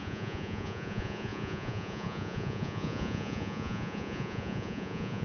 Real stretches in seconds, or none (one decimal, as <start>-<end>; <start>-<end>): none